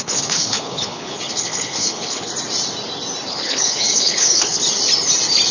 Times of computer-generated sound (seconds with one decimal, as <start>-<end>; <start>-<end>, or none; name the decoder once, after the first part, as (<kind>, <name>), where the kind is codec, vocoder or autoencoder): 0.0-2.3 (codec, HILCodec); 3.3-4.6